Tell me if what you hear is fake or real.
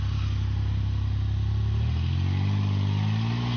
real